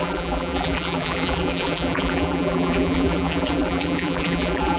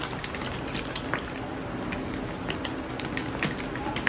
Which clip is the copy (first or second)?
first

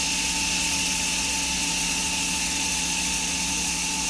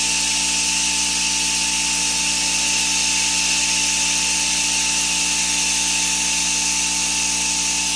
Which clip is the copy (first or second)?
first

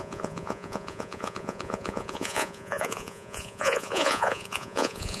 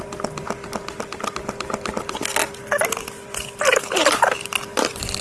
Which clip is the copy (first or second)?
first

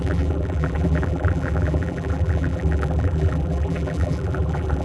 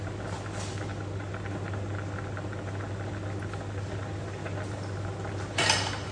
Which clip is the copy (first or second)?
first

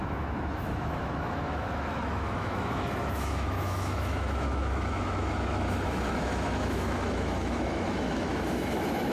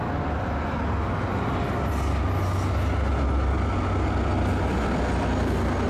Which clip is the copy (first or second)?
first